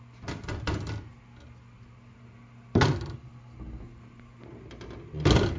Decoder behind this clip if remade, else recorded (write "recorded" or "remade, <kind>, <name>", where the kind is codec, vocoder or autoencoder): recorded